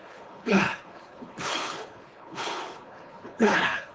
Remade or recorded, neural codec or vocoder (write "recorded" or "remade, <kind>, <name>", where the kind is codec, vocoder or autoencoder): remade, codec, HILCodec